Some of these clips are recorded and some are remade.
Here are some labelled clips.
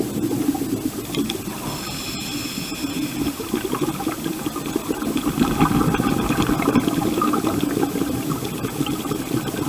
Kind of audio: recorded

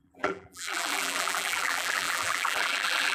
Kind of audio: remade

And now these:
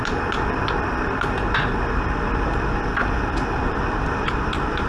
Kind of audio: recorded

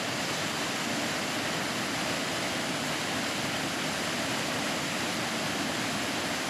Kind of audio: recorded